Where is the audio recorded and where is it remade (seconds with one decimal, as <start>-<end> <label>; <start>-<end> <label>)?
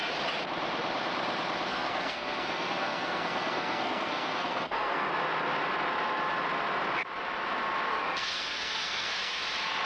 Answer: 0.0-1.7 recorded; 1.7-5.1 remade; 5.1-7.9 recorded; 7.9-9.4 remade; 9.4-9.9 recorded